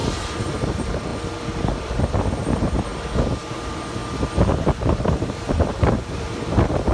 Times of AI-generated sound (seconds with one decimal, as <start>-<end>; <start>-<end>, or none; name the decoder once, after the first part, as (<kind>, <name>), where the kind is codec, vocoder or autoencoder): 0.0-2.9 (vocoder, BigVGAN v2); 3.4-4.0; 4.8-6.9